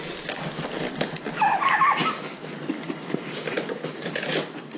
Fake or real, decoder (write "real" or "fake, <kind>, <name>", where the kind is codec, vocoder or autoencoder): real